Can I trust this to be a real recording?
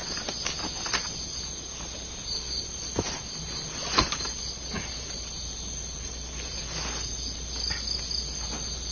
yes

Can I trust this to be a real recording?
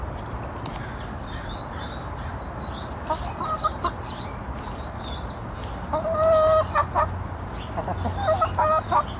yes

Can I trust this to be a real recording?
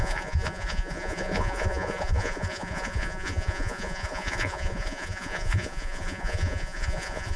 no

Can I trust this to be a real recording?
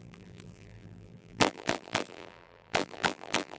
no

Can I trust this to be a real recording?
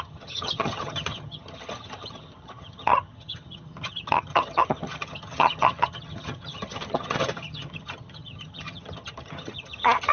no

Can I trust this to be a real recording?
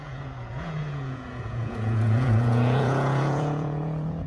no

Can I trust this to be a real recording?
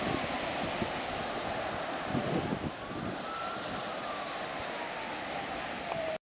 no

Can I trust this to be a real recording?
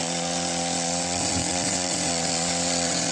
no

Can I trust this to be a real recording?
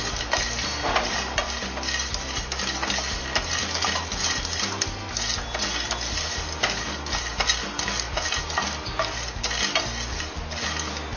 yes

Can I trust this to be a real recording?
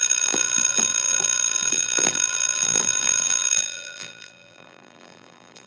no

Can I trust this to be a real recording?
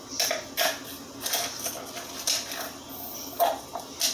yes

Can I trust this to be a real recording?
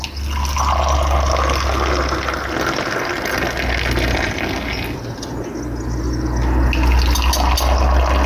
yes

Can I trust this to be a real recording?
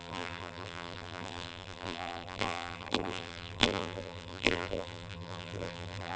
no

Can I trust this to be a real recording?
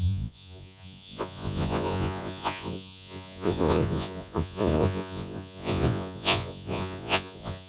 no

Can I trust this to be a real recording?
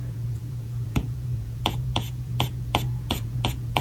no